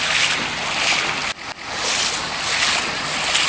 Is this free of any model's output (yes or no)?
yes